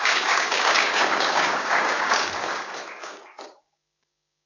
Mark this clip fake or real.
fake